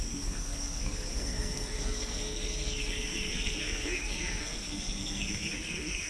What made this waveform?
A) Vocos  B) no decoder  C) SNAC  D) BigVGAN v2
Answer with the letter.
C